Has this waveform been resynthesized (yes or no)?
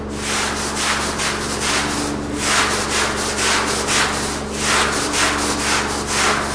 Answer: no